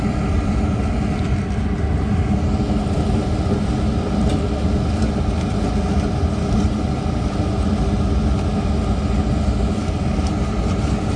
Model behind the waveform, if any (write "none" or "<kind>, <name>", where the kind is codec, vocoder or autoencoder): none